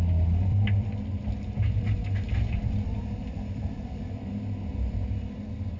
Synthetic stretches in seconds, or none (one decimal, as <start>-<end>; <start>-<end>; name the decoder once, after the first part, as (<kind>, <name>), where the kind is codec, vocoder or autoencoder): 0.5-1.2 (vocoder, BigVGAN v2); 3.2-4.3